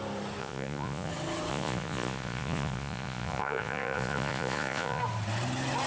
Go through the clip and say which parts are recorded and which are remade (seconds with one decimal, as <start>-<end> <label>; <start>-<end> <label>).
0.0-0.4 recorded; 0.4-1.1 remade; 1.1-1.5 recorded; 1.5-5.0 remade; 5.0-5.9 recorded

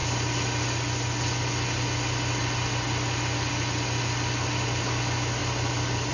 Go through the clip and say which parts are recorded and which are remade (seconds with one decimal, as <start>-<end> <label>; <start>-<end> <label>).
0.0-6.1 recorded